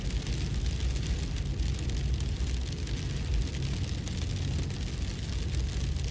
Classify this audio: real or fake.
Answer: real